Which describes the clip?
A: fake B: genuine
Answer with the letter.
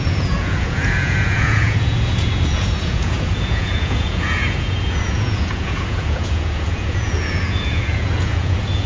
A